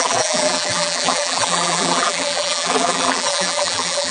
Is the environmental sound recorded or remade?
remade